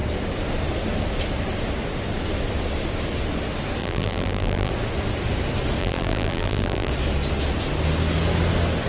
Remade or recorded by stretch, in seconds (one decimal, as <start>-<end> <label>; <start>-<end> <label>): 0.0-3.8 recorded; 3.8-4.7 remade; 4.7-5.8 recorded; 5.8-6.9 remade; 6.9-8.9 recorded